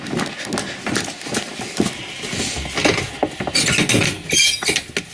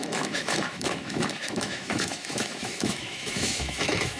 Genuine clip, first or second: first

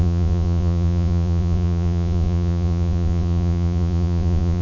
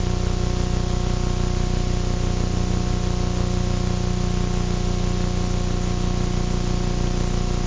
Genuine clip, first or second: second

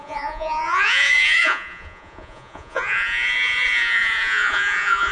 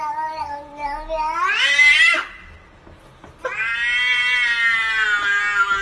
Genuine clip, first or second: second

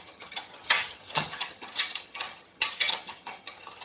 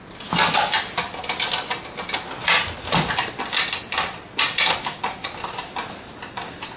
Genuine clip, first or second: second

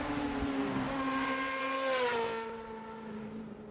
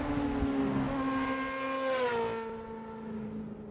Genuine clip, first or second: second